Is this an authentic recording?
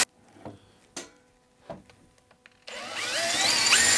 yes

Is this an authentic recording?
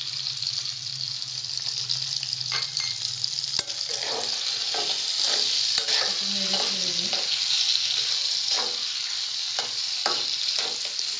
yes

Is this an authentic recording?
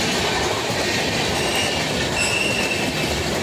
yes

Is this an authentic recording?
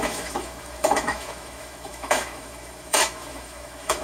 no